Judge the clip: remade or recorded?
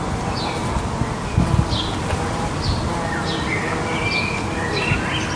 recorded